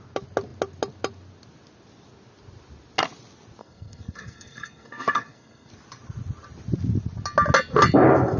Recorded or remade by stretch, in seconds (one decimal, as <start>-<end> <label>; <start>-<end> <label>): 0.0-3.6 recorded; 3.6-5.7 remade; 5.7-8.4 recorded